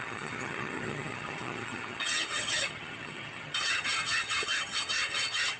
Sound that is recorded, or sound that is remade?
remade